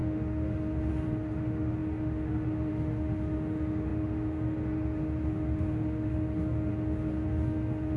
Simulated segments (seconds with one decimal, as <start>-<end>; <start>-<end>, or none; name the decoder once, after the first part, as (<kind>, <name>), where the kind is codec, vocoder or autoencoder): 0.0-8.0 (autoencoder, DAC-VAE)